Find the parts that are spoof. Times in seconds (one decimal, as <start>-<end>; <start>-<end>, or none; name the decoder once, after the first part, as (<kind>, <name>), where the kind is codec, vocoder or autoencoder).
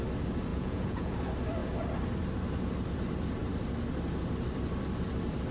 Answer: 0.5-1.1 (vocoder, Vocos)